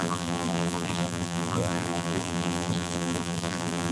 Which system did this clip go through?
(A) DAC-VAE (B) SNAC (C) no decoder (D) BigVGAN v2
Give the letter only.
D